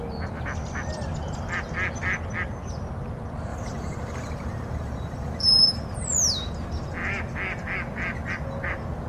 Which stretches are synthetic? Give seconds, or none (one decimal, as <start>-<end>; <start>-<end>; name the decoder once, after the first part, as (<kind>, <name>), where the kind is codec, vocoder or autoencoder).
3.5-5.8 (vocoder, BigVGAN v2)